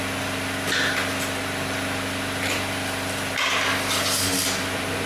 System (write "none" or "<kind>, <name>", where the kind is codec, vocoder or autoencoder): none